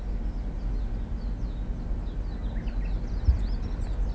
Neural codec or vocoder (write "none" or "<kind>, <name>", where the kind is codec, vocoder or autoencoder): none